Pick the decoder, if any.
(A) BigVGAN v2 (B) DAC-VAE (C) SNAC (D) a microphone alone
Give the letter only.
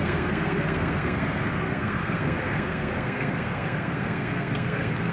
C